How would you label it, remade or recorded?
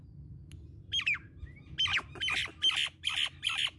recorded